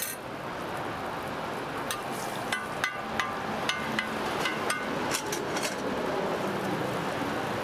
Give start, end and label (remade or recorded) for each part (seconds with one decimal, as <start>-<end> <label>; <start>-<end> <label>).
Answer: 0.0-7.6 recorded

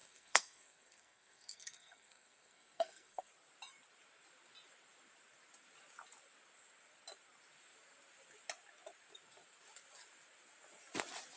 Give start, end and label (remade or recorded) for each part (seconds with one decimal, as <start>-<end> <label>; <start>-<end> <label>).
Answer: 0.0-3.3 remade; 3.3-11.4 recorded

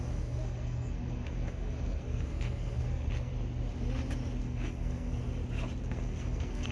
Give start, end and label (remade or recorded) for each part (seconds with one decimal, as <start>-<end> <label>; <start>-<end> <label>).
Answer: 0.0-3.3 remade; 3.3-4.4 recorded; 4.4-5.2 remade; 5.2-5.8 recorded; 5.8-6.7 remade

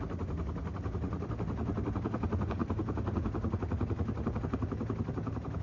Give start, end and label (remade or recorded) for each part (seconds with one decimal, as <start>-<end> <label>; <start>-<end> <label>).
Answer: 0.0-5.6 recorded

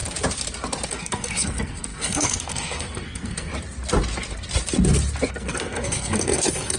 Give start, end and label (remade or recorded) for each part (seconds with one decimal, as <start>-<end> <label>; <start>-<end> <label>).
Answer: 0.0-0.9 recorded; 0.9-3.5 remade; 3.5-5.3 recorded; 5.3-6.8 remade